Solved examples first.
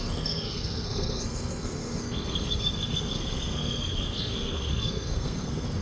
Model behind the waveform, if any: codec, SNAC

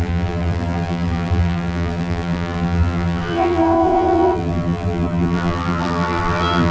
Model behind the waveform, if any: vocoder, BigVGAN v2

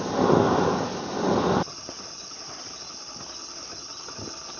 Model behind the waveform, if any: vocoder, BigVGAN v2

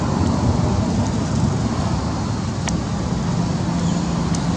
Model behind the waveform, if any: none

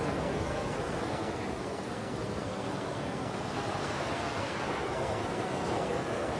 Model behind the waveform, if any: codec, SNAC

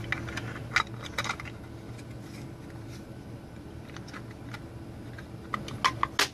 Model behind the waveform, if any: none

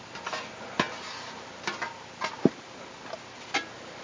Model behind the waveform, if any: none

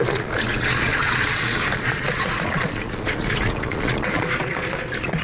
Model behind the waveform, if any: vocoder, Vocos